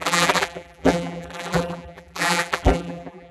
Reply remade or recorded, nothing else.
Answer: remade